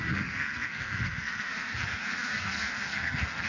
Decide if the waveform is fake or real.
fake